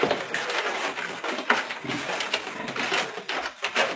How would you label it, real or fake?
real